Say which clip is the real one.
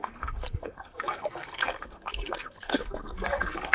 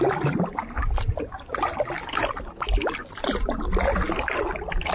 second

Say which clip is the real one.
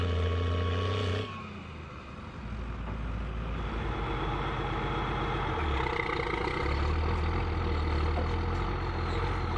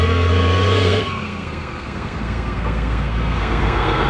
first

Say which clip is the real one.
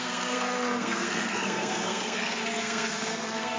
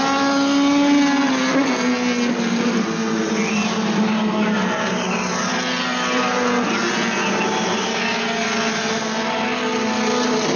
second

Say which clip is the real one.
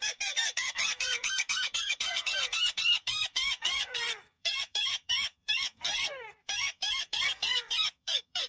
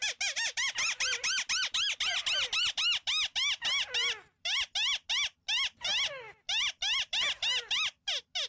second